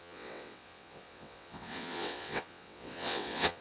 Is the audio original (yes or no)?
no